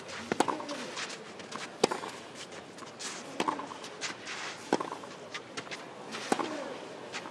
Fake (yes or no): no